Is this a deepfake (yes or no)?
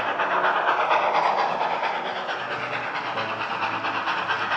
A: no